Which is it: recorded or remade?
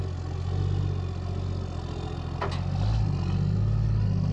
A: recorded